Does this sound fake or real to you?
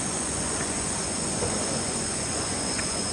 fake